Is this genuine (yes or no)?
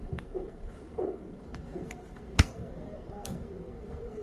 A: no